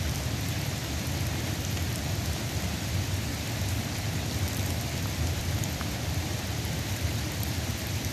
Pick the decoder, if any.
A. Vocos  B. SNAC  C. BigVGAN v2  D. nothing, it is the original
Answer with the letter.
C